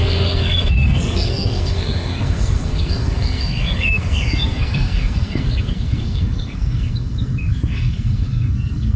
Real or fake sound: fake